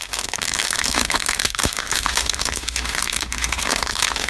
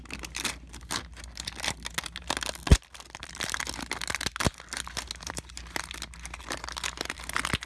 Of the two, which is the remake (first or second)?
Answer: first